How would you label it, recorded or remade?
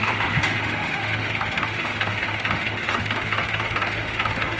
remade